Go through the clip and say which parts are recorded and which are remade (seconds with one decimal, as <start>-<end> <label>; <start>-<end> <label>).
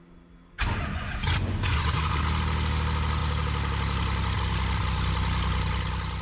0.0-0.9 recorded; 0.9-2.2 remade; 2.2-6.2 recorded